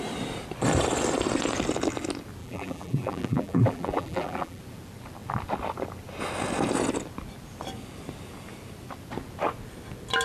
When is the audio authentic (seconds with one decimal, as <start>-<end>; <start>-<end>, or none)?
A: 0.0-2.4; 4.6-10.2